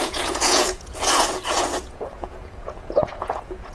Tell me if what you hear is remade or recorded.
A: remade